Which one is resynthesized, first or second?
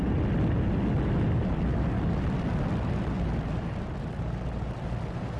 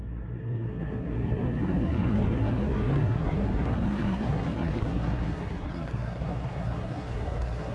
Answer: second